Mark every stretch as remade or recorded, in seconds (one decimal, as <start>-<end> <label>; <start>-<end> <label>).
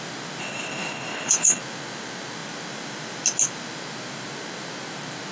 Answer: 0.0-0.4 recorded; 0.4-1.6 remade; 1.6-5.3 recorded